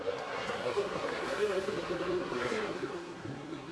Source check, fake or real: fake